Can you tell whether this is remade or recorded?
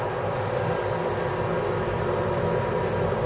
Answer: recorded